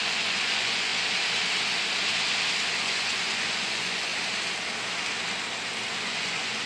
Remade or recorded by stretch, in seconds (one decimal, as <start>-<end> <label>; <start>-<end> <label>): 0.0-0.9 remade; 0.9-2.8 recorded; 2.8-4.1 remade; 4.1-5.9 recorded; 5.9-6.7 remade